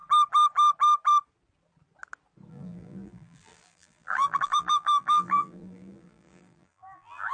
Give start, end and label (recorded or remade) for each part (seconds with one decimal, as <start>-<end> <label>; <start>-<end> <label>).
0.0-2.5 recorded; 2.5-7.3 remade